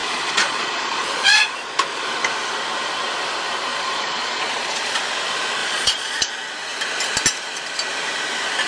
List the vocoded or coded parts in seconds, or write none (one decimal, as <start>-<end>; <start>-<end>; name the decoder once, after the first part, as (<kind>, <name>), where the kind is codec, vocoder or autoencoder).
0.0-1.7 (vocoder, Vocos); 3.7-5.0; 5.6-6.3